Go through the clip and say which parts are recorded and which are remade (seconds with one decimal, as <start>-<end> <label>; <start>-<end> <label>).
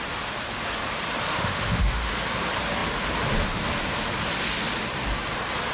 0.0-1.3 recorded; 1.3-2.1 remade; 2.1-5.7 recorded